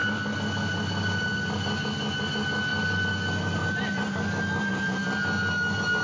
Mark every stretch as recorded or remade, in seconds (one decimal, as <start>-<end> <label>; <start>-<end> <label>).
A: 0.0-6.0 recorded